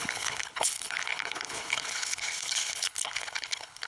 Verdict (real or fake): fake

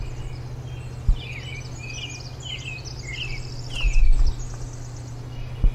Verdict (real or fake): real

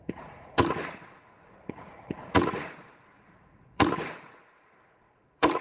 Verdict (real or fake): fake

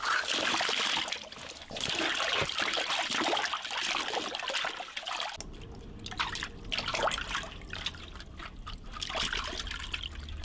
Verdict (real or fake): real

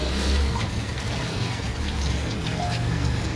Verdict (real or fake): fake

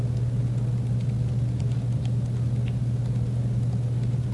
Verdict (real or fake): real